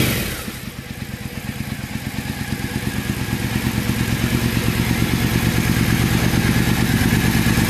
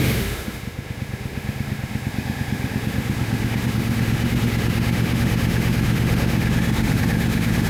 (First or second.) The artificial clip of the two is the second